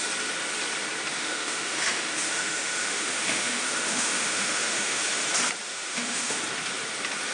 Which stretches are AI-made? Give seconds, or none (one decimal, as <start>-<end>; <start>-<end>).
1.2-5.0; 5.7-6.4